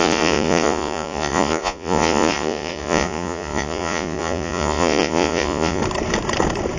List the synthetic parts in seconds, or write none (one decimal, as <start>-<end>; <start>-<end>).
0.0-5.8